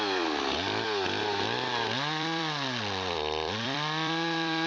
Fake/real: fake